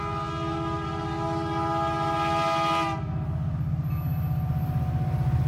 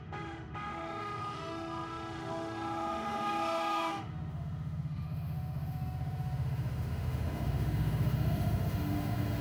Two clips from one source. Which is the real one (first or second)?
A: first